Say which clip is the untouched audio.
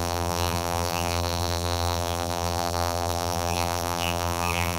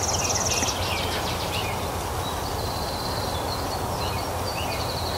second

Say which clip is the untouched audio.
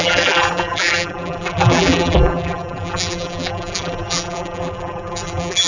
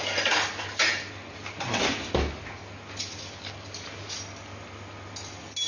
second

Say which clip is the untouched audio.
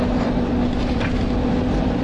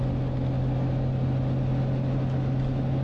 second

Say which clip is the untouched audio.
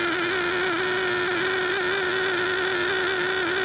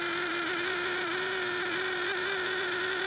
first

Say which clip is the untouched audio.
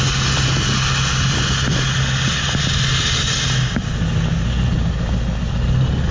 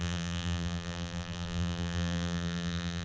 first